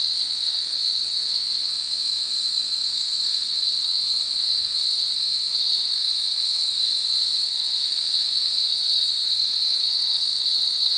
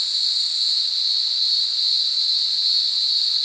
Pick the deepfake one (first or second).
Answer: first